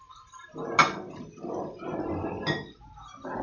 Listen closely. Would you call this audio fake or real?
real